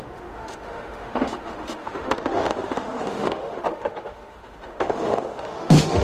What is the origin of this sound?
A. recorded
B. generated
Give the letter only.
B